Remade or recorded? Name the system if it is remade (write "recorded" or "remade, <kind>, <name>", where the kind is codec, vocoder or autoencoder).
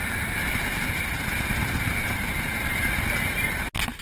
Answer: recorded